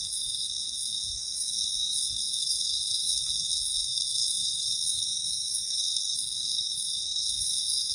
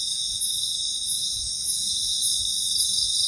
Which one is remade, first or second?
first